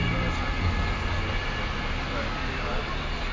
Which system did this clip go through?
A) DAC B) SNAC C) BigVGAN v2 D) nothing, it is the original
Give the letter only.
D